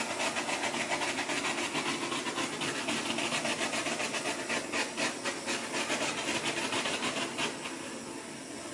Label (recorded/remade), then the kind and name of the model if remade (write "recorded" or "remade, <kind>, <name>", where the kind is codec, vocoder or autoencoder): recorded